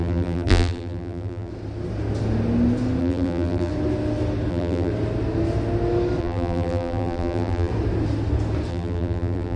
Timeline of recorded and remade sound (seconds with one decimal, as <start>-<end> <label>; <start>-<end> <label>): 0.0-1.5 remade; 1.5-3.0 recorded; 3.0-3.7 remade; 3.7-4.5 recorded; 4.5-4.9 remade; 4.9-6.2 recorded; 6.2-7.7 remade; 7.7-8.7 recorded; 8.7-9.6 remade